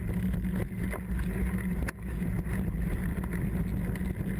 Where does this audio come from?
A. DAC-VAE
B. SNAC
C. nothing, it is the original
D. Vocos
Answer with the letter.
C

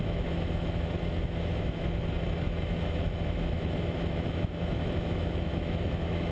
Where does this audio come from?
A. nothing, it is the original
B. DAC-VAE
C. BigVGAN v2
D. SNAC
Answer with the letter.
B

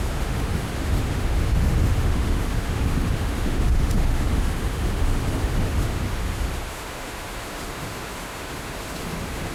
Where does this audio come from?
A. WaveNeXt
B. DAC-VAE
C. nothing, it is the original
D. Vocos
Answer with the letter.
B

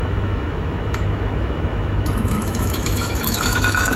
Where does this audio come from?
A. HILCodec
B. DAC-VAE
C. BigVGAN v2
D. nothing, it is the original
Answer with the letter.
B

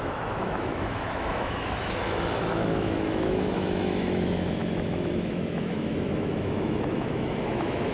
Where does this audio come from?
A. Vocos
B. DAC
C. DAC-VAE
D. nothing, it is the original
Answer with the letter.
C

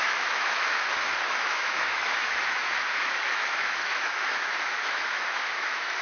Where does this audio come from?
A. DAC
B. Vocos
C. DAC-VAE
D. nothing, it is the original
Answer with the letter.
C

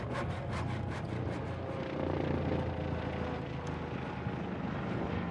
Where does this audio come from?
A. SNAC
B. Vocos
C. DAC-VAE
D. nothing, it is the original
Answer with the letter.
D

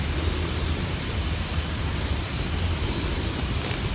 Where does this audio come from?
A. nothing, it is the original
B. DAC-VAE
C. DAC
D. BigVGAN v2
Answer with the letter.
A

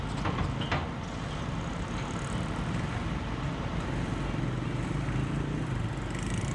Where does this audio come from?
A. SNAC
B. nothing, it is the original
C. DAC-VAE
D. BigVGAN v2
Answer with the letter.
B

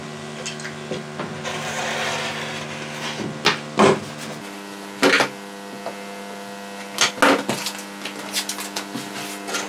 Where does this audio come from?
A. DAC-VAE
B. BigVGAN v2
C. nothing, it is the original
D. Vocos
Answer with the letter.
C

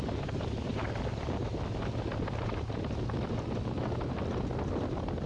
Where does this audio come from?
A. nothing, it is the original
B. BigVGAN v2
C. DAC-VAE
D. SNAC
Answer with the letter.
A